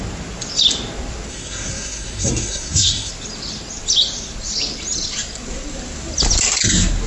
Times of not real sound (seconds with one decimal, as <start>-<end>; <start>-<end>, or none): 1.3-3.1